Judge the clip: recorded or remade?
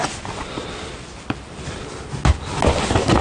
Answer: recorded